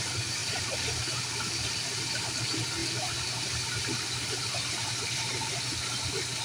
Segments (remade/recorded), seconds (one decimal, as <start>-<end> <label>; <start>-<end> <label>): 0.0-0.4 recorded; 0.4-2.1 remade; 2.1-2.8 recorded; 2.8-5.5 remade; 5.5-6.4 recorded